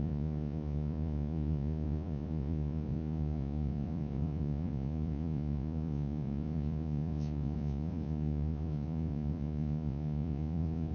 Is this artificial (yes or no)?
yes